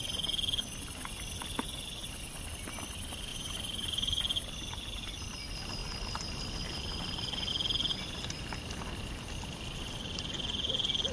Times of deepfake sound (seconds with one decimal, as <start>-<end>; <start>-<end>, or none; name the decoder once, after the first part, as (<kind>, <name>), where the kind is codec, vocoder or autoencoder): 3.3-4.2 (vocoder, BigVGAN v2)